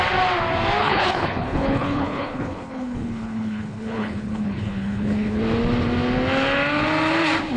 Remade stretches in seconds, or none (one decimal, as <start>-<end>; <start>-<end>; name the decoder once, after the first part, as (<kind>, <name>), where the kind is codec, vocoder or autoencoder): 0.8-5.4 (codec, HILCodec)